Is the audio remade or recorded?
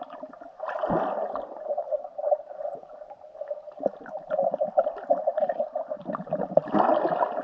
recorded